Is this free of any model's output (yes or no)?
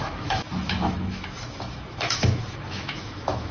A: no